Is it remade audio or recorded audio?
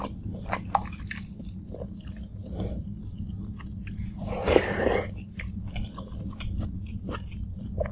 recorded